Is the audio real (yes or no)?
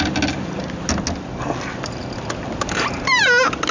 yes